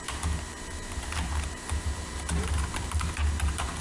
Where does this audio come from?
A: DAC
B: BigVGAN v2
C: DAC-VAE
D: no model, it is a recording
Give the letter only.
B